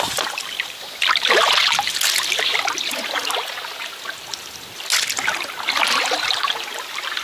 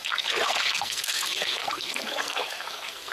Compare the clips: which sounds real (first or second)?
first